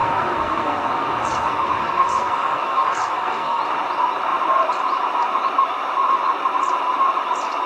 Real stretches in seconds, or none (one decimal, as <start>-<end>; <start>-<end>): 3.6-7.7